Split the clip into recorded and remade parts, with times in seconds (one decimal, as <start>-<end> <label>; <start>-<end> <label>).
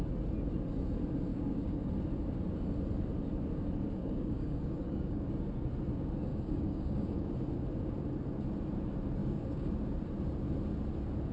0.0-1.3 recorded; 1.3-1.9 remade; 1.9-4.0 recorded; 4.0-5.3 remade; 5.3-6.3 recorded; 6.3-7.3 remade; 7.3-9.2 recorded; 9.2-9.7 remade; 9.7-11.3 recorded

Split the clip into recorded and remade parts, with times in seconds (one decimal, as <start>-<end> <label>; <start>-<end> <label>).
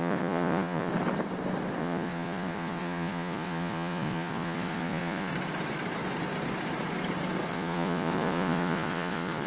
0.0-0.9 remade; 0.9-1.8 recorded; 1.8-5.3 remade; 5.3-7.5 recorded; 7.5-9.5 remade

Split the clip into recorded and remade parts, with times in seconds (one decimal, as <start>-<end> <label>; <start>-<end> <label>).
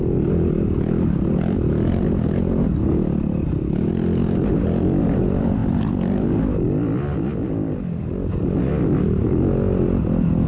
0.0-10.5 recorded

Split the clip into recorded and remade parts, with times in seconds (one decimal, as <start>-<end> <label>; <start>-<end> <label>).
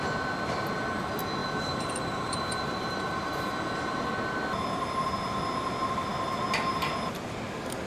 0.0-1.4 recorded; 1.4-3.9 remade; 3.9-7.9 recorded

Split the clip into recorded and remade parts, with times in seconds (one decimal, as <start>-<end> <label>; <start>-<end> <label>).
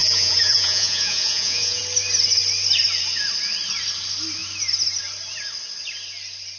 0.0-1.8 remade; 1.8-6.6 recorded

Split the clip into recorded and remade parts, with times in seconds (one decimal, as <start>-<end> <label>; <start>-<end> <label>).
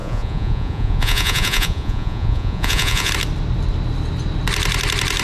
0.0-3.1 remade; 3.1-5.2 recorded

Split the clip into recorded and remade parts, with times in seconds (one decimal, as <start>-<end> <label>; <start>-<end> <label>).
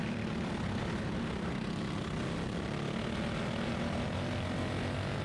0.0-1.0 remade; 1.0-5.2 recorded